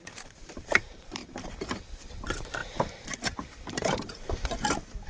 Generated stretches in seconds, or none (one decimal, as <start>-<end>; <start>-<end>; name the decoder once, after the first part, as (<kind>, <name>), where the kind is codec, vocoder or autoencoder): 0.0-5.1 (vocoder, BigVGAN v2)